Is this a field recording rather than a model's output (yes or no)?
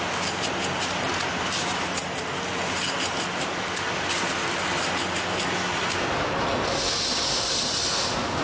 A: yes